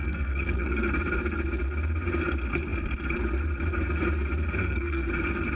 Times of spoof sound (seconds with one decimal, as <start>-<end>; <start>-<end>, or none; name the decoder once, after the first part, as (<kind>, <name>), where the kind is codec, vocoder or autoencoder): 0.0-0.9 (codec, SNAC); 4.6-5.1